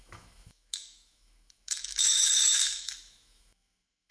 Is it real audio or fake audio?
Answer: fake